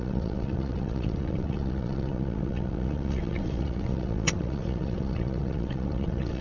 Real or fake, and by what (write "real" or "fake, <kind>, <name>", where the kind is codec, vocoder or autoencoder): fake, vocoder, WaveNeXt